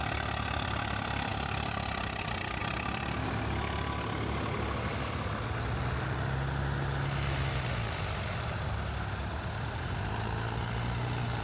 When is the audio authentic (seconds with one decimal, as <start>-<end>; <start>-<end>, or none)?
0.0-11.4